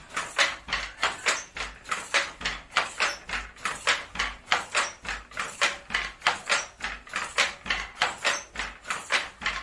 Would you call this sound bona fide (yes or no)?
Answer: yes